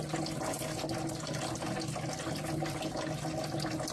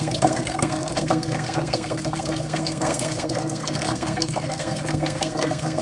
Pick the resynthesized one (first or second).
second